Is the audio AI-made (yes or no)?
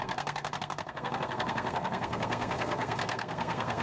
yes